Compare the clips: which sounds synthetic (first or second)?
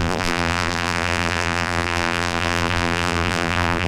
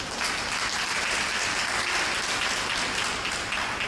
first